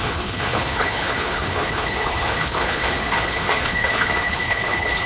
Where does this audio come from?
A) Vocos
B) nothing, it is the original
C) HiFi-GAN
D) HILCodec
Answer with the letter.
D